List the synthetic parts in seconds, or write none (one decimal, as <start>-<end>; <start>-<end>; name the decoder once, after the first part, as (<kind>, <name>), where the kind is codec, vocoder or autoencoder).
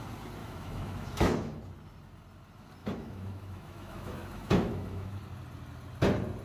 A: 0.4-1.6 (autoencoder, DAC-VAE); 2.8-5.2